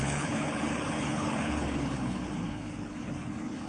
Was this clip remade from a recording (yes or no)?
yes